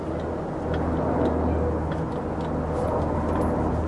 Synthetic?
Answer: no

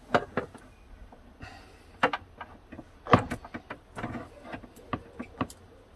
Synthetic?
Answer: no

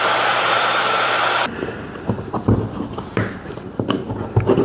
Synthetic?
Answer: yes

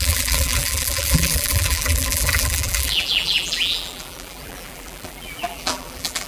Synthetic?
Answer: yes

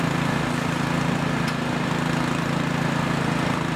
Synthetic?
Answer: no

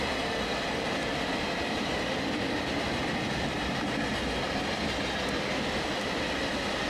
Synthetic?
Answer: no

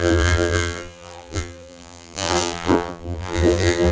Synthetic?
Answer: yes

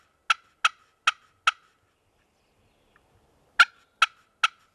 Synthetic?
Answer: no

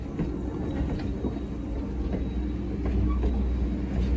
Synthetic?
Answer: no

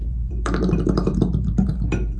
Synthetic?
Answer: yes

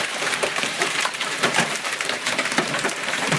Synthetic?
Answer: yes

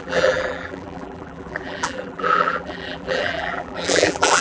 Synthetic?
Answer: yes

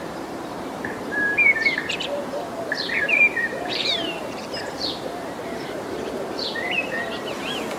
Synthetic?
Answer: yes